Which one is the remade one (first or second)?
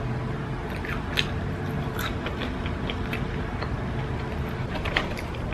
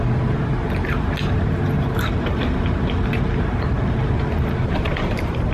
second